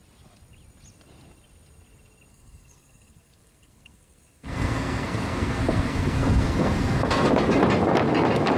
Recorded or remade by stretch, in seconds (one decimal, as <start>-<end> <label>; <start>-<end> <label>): 0.0-2.3 recorded; 2.3-7.3 remade; 7.3-8.6 recorded